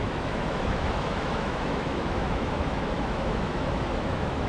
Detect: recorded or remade remade